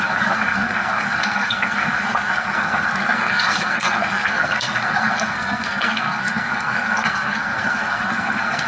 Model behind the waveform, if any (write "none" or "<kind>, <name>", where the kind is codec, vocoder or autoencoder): codec, SNAC